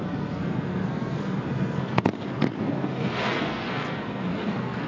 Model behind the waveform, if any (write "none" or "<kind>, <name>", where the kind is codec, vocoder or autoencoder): codec, SNAC